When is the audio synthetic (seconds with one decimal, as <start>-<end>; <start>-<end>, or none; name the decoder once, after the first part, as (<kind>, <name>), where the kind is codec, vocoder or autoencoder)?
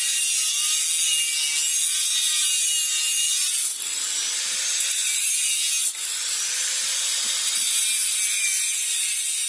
none